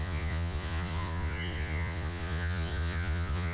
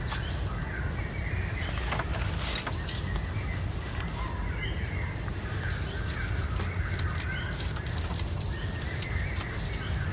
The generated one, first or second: first